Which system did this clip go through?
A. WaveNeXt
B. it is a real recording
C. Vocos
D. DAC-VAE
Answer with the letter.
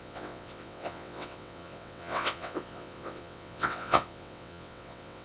A